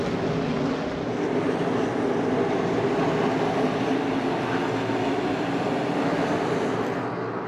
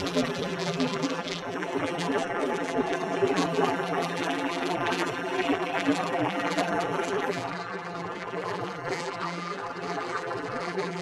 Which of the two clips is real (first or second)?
first